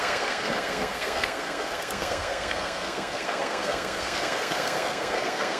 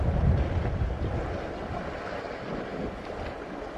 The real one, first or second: second